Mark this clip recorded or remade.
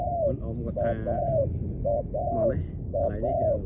recorded